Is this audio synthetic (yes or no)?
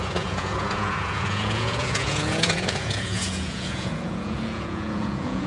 yes